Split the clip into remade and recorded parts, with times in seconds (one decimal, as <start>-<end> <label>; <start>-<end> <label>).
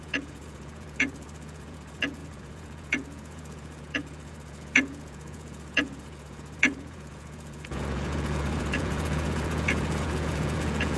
0.0-11.0 remade